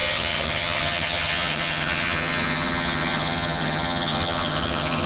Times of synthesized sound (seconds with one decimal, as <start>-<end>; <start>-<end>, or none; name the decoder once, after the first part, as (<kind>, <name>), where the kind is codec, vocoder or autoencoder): 0.0-5.1 (vocoder, HiFi-GAN)